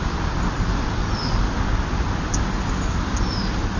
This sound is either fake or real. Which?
real